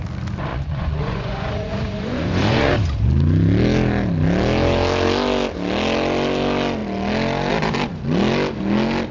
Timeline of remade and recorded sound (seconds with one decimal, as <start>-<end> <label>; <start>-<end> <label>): 0.0-0.5 recorded; 0.5-2.7 remade; 2.7-9.1 recorded